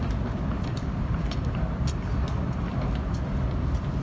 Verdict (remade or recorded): recorded